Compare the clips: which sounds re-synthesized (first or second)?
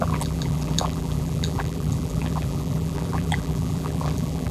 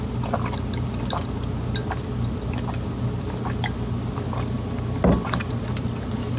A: first